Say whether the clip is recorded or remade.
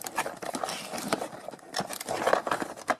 recorded